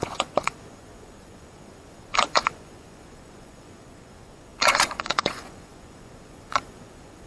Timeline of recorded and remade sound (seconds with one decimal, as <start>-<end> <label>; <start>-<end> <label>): 0.0-7.3 remade